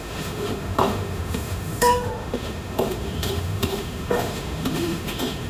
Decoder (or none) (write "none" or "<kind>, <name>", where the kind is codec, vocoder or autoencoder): autoencoder, DAC-VAE